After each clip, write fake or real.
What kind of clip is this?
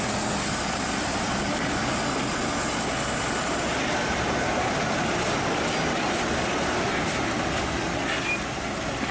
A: real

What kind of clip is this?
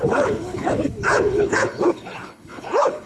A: fake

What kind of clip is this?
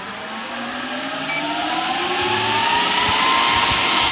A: real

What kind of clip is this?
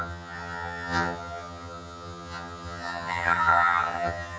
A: fake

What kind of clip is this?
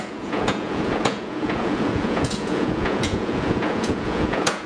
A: fake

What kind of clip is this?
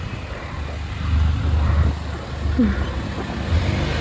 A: real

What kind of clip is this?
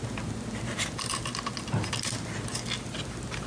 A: real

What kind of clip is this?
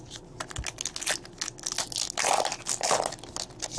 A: real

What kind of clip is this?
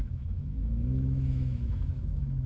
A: fake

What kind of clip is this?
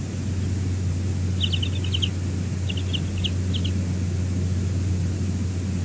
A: real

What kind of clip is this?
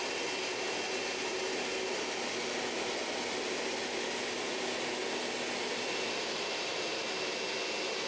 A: real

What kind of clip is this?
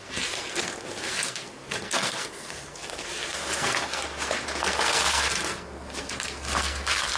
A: fake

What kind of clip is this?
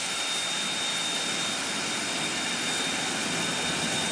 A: real